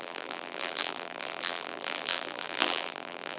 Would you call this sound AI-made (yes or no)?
yes